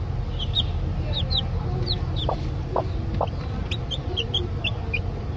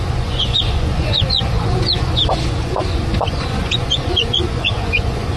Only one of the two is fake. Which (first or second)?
second